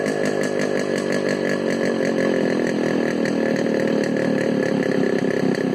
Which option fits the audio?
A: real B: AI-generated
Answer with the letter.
A